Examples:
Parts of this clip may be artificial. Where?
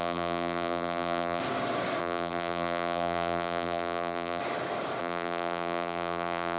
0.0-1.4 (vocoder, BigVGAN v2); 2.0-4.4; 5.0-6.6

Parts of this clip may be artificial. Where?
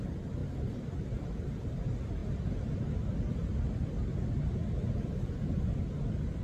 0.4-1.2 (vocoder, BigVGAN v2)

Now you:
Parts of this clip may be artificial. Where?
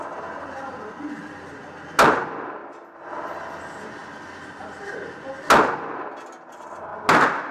none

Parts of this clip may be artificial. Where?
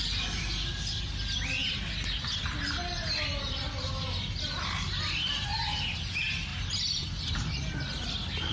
none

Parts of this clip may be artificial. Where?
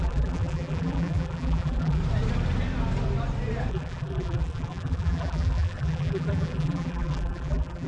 0.0-2.0 (vocoder, BigVGAN v2); 3.7-7.9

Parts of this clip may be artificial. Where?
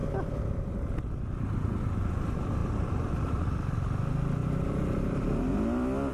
2.6-3.3 (vocoder, BigVGAN v2); 4.4-5.3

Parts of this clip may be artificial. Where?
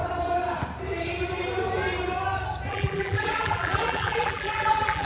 2.7-5.0 (vocoder, BigVGAN v2)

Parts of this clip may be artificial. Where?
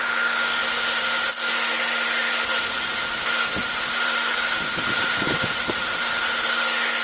3.6-6.1 (vocoder, BigVGAN v2)